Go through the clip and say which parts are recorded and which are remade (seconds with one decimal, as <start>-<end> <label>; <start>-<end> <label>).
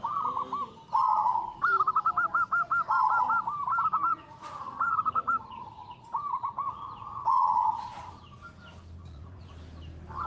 0.0-1.1 recorded; 1.1-1.6 remade; 1.6-4.1 recorded; 4.1-8.1 remade; 8.1-9.0 recorded; 9.0-9.5 remade; 9.5-10.3 recorded